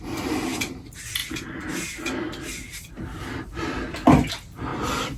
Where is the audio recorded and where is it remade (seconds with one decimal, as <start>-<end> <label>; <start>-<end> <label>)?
0.0-5.2 recorded